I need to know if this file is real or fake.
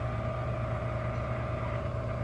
fake